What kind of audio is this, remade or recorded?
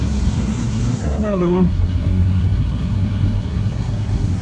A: remade